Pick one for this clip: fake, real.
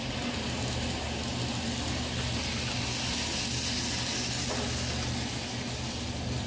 real